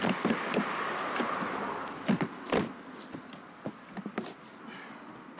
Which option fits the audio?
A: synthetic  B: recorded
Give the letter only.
B